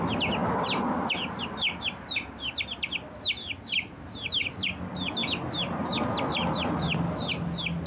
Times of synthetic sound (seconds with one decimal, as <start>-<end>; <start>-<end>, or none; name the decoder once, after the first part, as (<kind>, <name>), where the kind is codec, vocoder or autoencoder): 0.4-0.9 (vocoder, BigVGAN v2)